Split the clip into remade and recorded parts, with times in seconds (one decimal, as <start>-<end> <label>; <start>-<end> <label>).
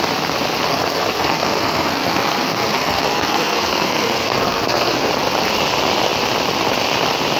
0.0-0.7 recorded; 0.7-5.1 remade; 5.1-7.4 recorded